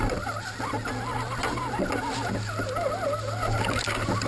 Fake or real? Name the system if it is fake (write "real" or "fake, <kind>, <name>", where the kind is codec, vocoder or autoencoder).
real